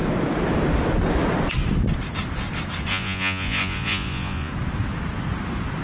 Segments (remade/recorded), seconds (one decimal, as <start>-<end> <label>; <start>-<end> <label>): 0.0-2.9 recorded; 2.9-4.5 remade; 4.5-5.8 recorded